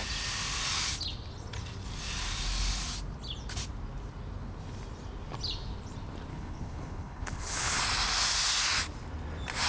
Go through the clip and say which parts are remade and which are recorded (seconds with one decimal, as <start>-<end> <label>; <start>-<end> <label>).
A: 0.0-6.3 recorded; 6.3-7.8 remade; 7.8-9.7 recorded